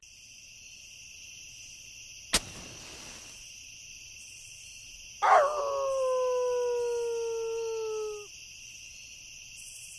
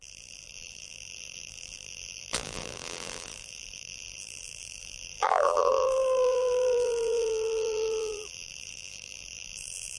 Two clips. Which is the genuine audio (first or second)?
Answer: first